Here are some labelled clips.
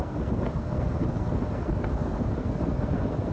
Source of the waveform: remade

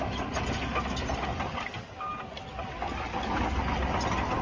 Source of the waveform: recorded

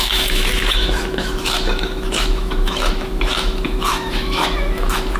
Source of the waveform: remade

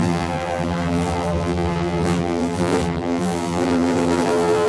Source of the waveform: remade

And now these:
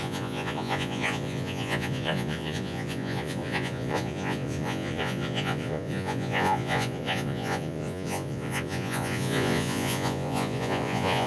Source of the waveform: remade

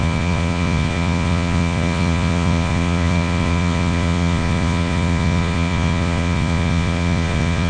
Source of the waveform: remade